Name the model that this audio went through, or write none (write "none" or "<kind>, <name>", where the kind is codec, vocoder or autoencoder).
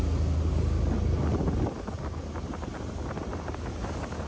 none